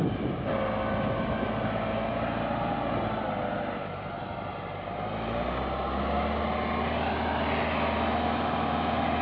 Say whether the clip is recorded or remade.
recorded